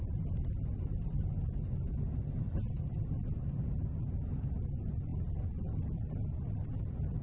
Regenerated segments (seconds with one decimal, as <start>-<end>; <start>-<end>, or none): none